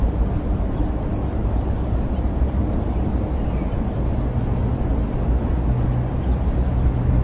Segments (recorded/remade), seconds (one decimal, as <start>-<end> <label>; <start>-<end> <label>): 0.0-7.2 recorded